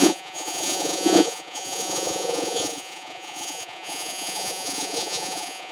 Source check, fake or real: fake